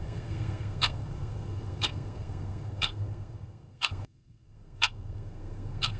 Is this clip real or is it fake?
fake